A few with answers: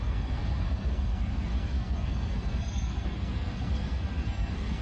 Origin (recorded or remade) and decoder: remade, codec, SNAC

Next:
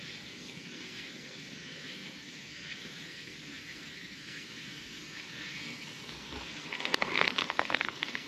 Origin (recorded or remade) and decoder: remade, codec, SNAC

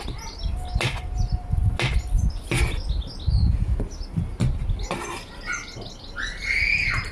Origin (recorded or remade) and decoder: recorded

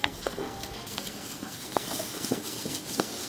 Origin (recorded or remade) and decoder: remade, codec, SNAC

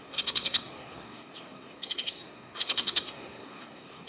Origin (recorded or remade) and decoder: remade, codec, SNAC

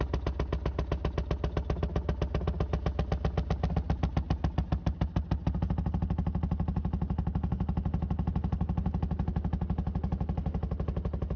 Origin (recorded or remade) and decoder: recorded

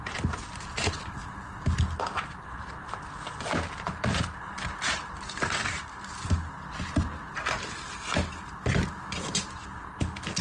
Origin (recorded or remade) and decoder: recorded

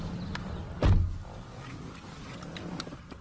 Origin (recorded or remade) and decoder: recorded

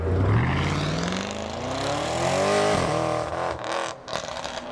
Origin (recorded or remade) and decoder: recorded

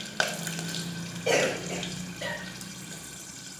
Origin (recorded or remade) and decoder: recorded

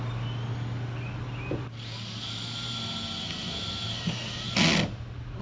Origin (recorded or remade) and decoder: recorded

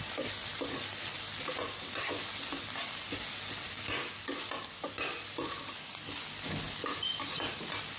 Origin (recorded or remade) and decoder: recorded